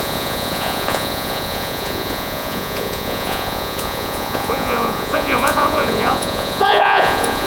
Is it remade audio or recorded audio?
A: remade